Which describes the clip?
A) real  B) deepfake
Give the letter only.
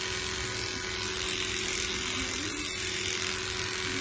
A